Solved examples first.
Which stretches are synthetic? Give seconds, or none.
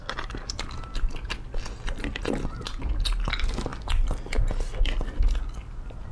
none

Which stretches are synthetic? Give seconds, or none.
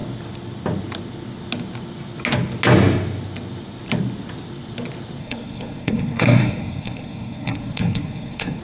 5.2-8.6 (codec, SNAC)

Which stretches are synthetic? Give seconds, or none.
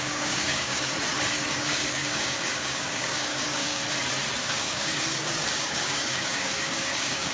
0.0-0.9 (codec, DAC); 1.5-3.8; 4.4-7.3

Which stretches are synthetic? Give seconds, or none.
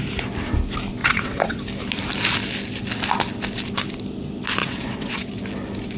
1.0-1.6 (vocoder, WaveNeXt); 4.6-5.3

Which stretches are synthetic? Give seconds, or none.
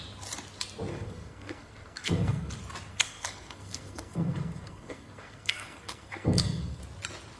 0.9-2.5 (codec, SNAC); 2.9-6.8